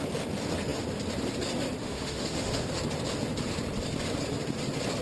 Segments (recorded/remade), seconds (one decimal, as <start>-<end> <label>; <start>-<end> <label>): 0.0-1.8 recorded; 1.8-2.7 remade; 2.7-5.0 recorded